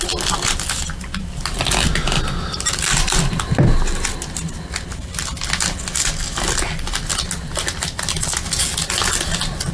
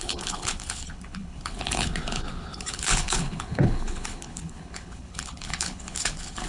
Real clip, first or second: first